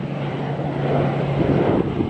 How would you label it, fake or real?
real